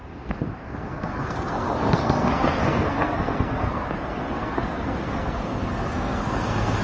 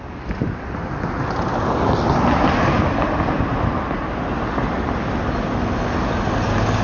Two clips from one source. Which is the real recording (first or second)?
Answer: second